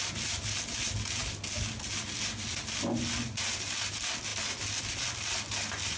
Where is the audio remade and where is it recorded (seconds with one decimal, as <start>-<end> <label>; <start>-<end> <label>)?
0.0-6.0 recorded